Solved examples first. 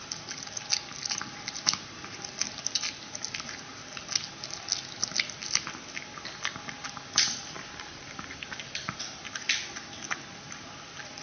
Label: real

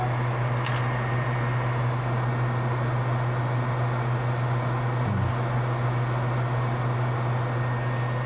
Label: real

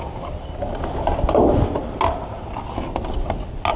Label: real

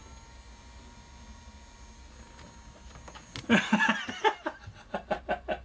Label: real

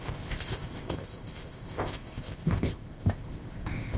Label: fake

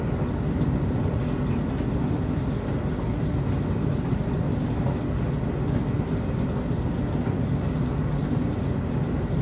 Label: real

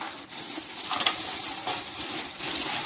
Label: real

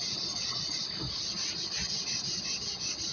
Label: real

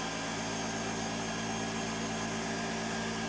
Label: real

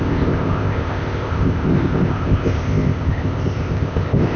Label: fake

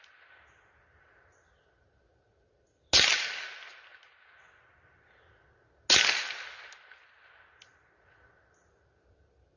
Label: real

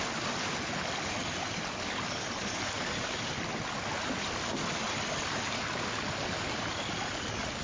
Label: real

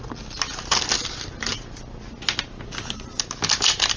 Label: real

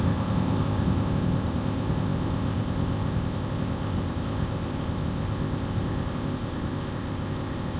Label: fake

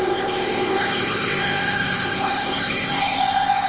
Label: fake